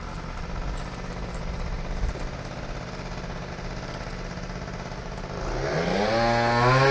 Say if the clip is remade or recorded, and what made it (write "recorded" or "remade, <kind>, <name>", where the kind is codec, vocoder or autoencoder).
recorded